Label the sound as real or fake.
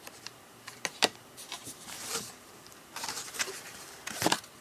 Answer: fake